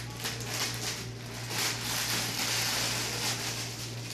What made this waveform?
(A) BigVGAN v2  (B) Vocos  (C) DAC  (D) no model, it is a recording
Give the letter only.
D